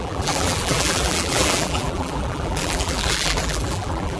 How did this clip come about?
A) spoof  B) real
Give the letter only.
A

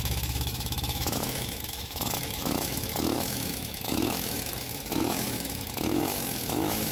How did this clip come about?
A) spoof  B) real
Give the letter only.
A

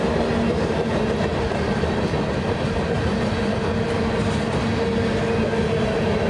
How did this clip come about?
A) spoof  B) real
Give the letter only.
B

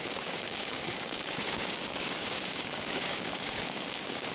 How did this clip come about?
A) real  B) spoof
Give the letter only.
B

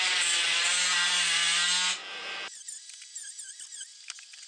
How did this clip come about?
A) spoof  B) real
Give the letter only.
B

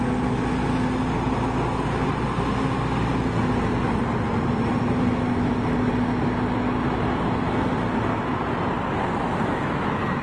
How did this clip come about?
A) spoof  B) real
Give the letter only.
B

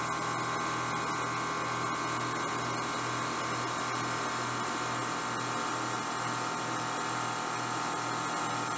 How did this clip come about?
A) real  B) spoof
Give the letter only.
A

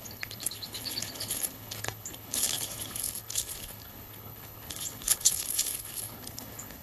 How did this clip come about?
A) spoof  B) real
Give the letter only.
A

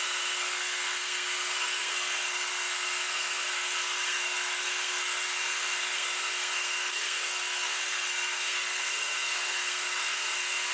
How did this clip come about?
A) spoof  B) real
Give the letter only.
A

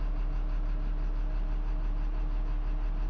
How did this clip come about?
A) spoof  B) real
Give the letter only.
B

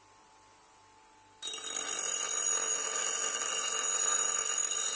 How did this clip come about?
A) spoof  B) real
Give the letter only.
B